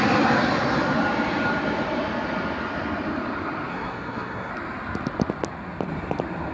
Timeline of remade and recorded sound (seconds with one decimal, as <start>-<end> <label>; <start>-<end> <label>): 0.0-3.7 recorded; 3.7-4.5 remade; 4.5-6.5 recorded